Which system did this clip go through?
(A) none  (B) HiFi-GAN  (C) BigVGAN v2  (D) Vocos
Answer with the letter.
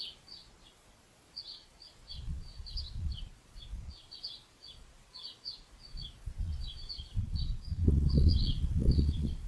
D